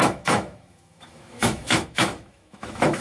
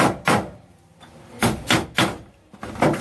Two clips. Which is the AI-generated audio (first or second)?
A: first